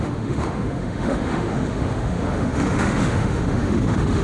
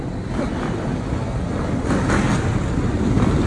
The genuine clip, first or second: second